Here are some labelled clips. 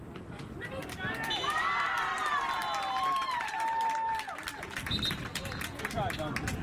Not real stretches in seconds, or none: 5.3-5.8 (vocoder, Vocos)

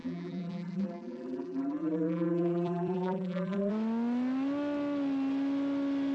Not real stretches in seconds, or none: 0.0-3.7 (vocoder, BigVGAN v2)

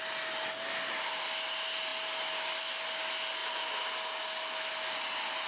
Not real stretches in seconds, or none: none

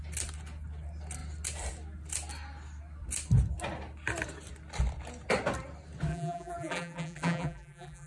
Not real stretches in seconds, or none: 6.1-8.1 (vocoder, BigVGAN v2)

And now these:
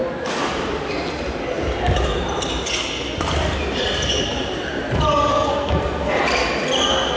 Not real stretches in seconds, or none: 5.3-6.1 (codec, SNAC)

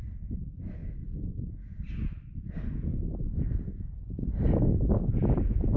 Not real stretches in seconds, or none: none